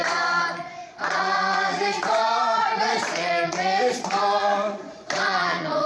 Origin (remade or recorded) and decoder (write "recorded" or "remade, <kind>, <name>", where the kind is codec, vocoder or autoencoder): remade, vocoder, Vocos